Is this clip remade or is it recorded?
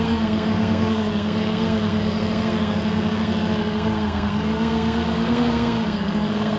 remade